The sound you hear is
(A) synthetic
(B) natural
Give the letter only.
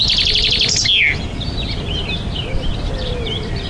B